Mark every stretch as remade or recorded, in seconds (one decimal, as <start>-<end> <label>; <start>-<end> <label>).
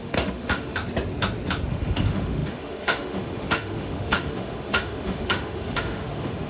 0.0-0.8 remade; 0.8-1.7 recorded; 1.7-6.5 remade